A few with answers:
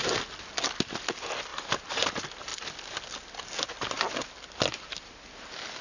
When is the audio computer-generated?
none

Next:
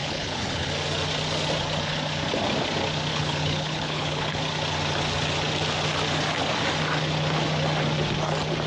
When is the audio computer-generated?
0.0-0.7; 3.1-4.4

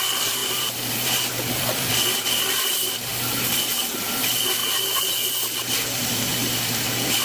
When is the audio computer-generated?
0.0-3.1; 3.8-4.6; 6.0-7.2

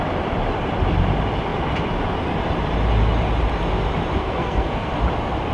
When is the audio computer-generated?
4.2-4.9

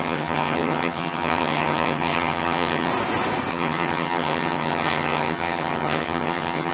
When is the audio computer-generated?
0.0-2.9; 3.5-6.7